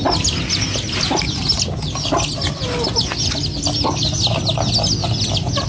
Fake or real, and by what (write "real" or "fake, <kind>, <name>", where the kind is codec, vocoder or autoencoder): real